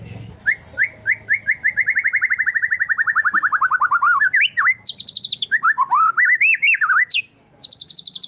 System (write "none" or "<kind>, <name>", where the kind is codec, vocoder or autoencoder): none